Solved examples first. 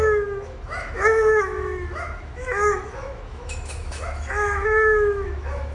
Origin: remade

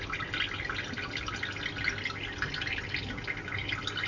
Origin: recorded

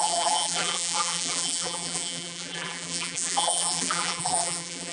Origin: remade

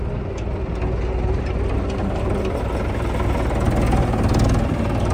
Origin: recorded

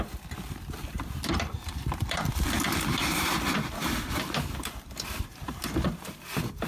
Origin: remade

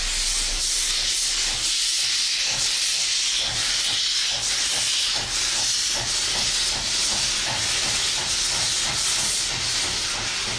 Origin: recorded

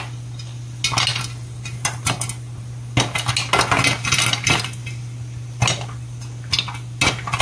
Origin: recorded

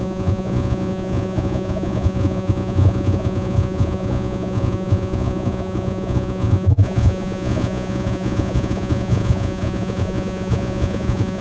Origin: remade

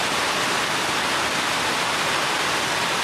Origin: recorded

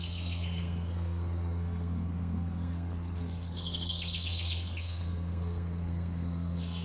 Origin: remade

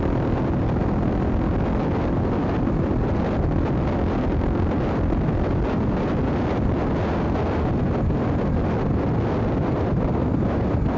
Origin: recorded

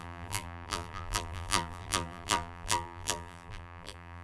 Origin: remade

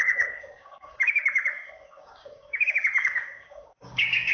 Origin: remade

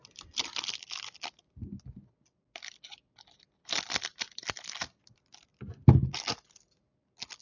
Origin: recorded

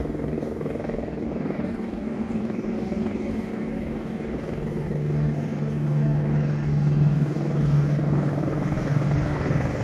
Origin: remade